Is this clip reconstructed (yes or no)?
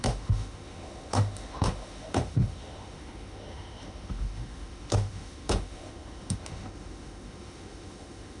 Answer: yes